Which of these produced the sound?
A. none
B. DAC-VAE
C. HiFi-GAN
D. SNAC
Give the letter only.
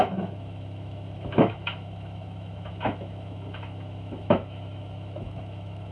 B